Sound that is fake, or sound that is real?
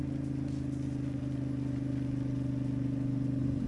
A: real